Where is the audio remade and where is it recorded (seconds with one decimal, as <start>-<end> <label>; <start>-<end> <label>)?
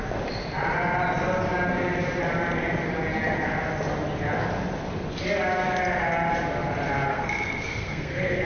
0.0-7.1 recorded; 7.1-8.4 remade